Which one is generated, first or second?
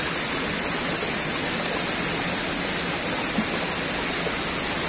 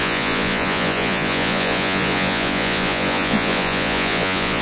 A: second